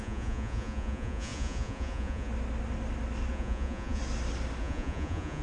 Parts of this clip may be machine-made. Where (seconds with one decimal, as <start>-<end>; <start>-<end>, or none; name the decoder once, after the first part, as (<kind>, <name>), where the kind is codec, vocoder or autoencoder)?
0.0-2.3 (vocoder, Vocos); 3.3-4.0; 4.6-5.4